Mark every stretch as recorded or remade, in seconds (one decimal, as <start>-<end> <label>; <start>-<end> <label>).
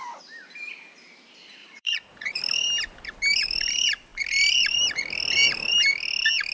0.0-1.6 recorded; 1.6-2.4 remade; 2.4-6.5 recorded